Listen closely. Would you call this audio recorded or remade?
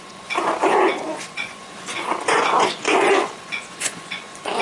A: remade